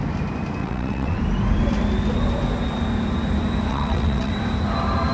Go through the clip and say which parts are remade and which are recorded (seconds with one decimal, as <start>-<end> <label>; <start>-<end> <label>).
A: 0.0-0.6 recorded; 0.6-1.2 remade; 1.2-3.7 recorded; 3.7-4.3 remade; 4.3-5.1 recorded